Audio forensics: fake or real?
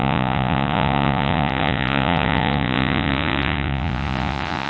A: fake